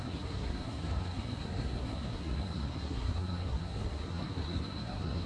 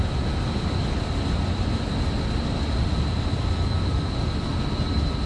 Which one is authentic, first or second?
second